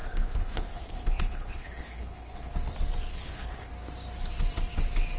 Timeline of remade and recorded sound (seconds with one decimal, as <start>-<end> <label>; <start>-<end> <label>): 0.0-2.5 remade; 2.5-3.1 recorded; 3.1-3.7 remade; 3.7-5.2 recorded